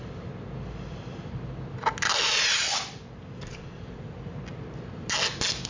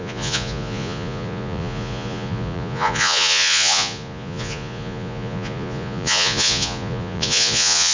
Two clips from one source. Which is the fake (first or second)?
second